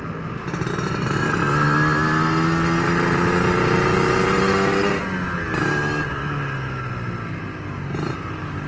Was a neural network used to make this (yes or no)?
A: no